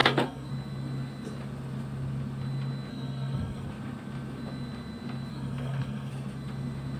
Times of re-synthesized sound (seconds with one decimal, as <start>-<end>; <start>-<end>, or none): 0.0-0.5; 2.9-3.7; 5.3-6.1